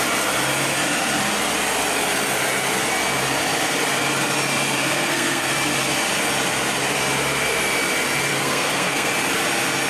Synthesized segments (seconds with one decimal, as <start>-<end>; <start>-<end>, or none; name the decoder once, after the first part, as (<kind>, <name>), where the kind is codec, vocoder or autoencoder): 4.8-5.5 (codec, SNAC); 8.3-9.1